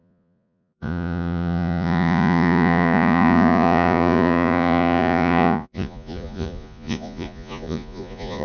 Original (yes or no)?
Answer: no